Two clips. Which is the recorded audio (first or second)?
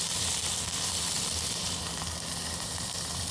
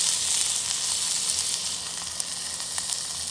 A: second